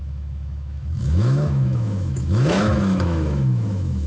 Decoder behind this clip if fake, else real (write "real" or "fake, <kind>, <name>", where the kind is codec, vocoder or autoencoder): fake, autoencoder, DAC-VAE